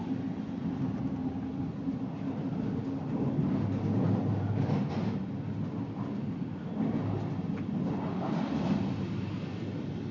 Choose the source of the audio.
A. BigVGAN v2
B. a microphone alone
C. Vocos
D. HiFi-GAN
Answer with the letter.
B